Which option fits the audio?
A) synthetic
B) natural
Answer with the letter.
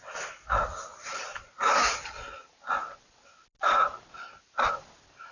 B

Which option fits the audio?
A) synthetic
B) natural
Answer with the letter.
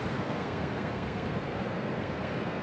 A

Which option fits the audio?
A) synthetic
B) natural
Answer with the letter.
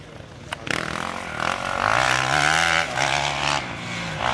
B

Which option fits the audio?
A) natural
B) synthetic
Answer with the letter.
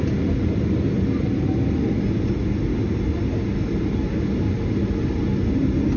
A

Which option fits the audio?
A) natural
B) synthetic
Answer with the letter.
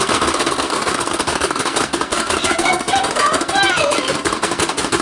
B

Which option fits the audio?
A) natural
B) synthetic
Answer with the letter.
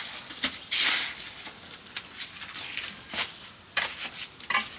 A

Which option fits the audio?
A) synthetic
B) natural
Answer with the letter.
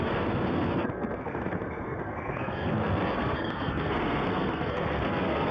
A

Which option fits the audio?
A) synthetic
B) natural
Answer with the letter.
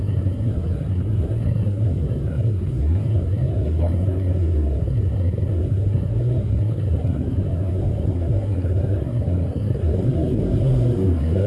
A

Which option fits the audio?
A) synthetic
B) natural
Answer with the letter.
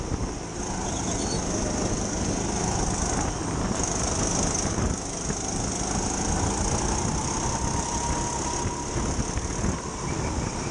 B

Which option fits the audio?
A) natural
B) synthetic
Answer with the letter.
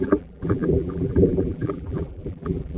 B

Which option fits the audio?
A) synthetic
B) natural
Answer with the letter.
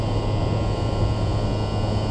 B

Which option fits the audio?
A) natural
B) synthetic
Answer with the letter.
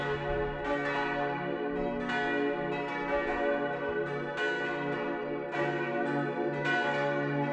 A